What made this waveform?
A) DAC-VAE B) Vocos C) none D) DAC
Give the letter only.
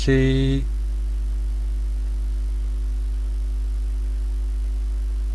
C